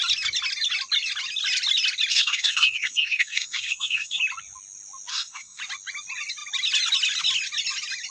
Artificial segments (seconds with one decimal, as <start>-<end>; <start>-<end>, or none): 2.1-4.2; 5.1-5.6